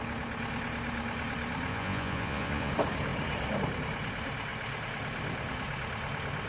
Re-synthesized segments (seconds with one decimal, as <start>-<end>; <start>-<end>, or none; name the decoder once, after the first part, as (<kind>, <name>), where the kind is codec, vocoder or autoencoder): 1.7-2.7 (vocoder, Vocos)